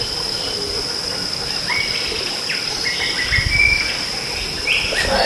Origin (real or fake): real